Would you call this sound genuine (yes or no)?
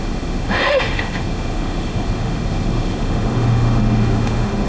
no